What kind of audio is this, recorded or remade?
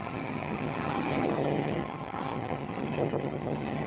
remade